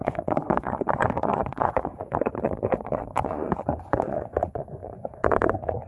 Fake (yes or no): yes